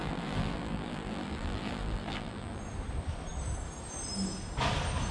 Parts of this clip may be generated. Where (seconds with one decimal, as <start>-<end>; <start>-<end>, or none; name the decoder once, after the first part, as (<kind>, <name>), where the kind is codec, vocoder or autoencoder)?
0.0-2.6 (vocoder, BigVGAN v2)